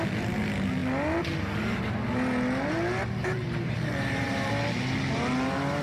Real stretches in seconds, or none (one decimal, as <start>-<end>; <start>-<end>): 0.0-3.2; 4.5-5.8